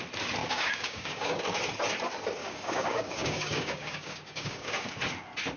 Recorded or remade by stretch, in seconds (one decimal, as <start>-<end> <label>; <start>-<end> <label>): 0.0-0.4 recorded; 0.4-1.4 remade; 1.4-2.4 recorded; 2.4-4.9 remade; 4.9-5.6 recorded